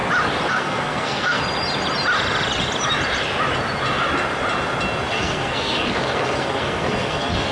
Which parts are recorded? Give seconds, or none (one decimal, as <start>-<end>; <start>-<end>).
0.0-0.5; 1.4-5.1